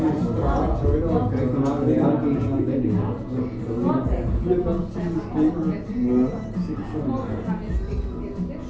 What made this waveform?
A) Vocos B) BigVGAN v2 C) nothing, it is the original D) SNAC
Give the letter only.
C